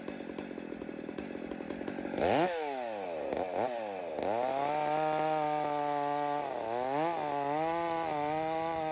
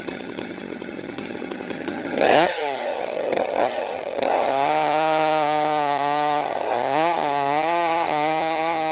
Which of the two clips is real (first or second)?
first